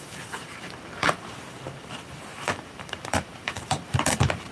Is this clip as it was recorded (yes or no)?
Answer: no